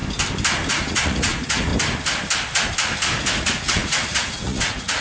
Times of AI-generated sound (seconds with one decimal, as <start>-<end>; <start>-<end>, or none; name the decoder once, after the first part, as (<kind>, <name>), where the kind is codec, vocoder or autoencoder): 0.7-1.7 (vocoder, Vocos); 3.4-5.0